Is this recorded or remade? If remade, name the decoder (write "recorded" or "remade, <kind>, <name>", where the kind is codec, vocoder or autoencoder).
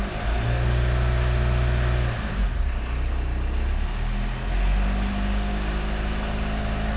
recorded